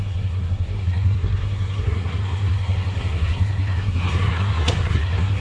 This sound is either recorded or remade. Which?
remade